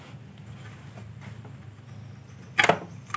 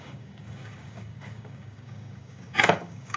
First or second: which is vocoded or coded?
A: second